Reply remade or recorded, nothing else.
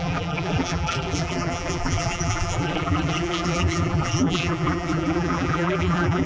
remade